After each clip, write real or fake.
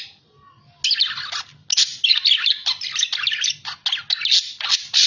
real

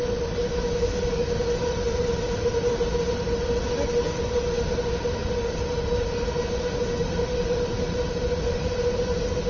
real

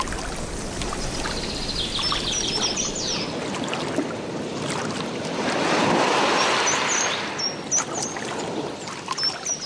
real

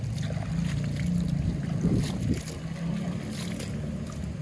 real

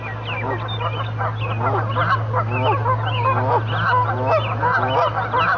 real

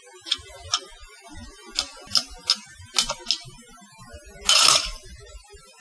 real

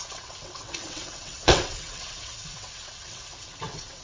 fake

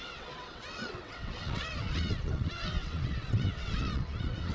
fake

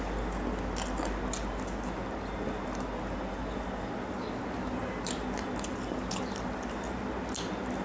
real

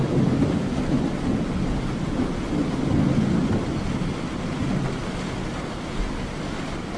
real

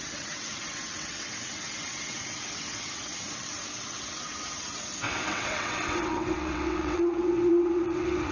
fake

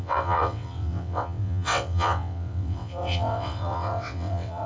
fake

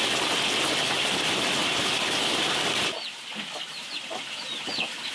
real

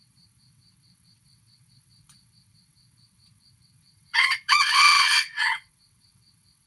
fake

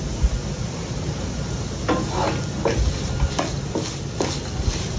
real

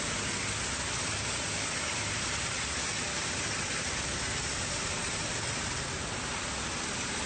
real